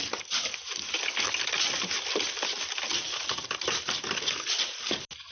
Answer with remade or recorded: recorded